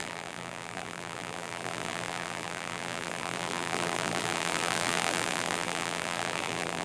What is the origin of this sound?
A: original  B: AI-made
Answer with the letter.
B